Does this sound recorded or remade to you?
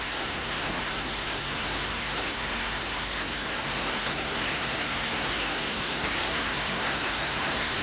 remade